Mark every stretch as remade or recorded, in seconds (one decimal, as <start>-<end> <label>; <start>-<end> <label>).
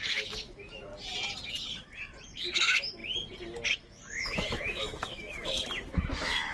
0.0-0.9 remade; 0.9-1.5 recorded; 1.5-3.0 remade; 3.0-3.7 recorded; 3.7-6.5 remade